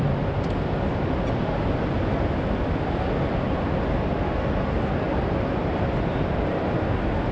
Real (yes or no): yes